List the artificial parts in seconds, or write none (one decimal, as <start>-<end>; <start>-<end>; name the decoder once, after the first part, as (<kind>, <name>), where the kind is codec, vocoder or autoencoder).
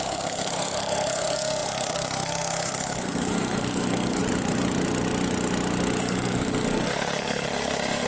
0.0-4.2 (codec, SNAC); 6.0-8.1